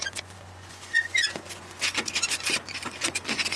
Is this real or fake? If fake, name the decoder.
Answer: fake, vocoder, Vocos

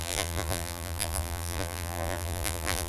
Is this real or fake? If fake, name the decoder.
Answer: fake, vocoder, BigVGAN v2